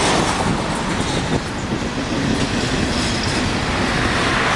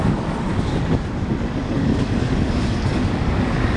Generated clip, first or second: second